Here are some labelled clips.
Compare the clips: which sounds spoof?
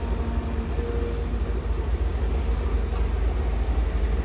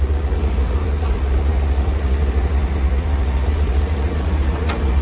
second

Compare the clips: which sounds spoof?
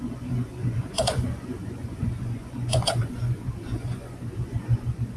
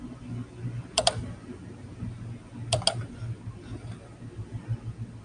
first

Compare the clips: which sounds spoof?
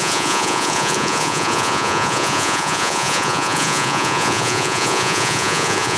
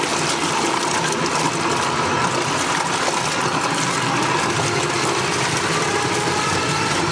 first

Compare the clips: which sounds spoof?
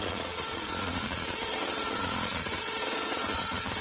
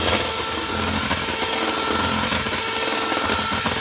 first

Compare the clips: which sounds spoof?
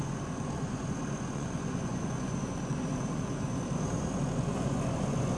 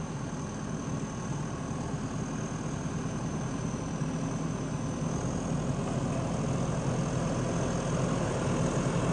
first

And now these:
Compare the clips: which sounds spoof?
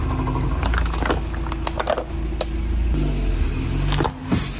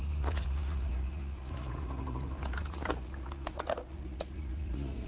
second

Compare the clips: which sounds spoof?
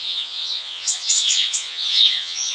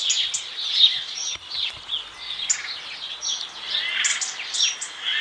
first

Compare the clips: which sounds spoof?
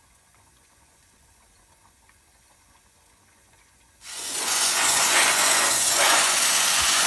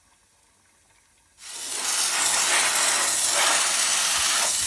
first